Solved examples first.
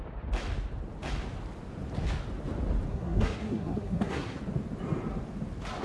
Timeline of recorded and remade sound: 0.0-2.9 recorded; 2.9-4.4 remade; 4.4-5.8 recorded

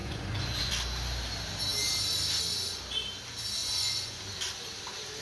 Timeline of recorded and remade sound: 0.0-0.7 remade; 0.7-3.6 recorded; 3.6-4.2 remade; 4.2-5.2 recorded

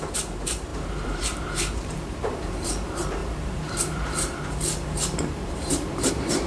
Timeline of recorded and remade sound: 0.0-6.5 remade

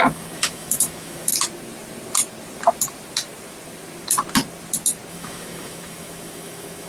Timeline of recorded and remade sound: 0.0-1.3 remade; 1.3-5.1 recorded; 5.1-6.9 remade

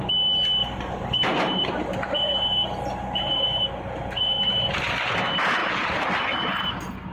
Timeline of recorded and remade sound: 0.0-0.6 recorded; 0.6-4.9 remade; 4.9-5.6 recorded; 5.6-7.1 remade

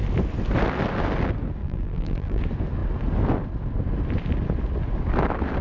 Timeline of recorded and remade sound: 0.0-1.6 recorded; 1.6-2.4 remade; 2.4-5.6 recorded

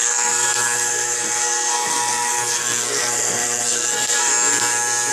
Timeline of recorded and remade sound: 0.0-4.3 remade; 4.3-5.1 recorded

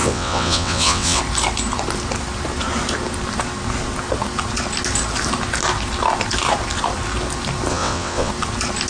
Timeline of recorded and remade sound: 0.0-1.2 remade; 1.2-7.7 recorded; 7.7-8.3 remade; 8.3-8.9 recorded